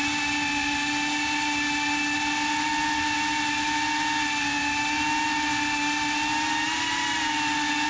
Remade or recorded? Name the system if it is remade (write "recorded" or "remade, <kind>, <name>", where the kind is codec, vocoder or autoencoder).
recorded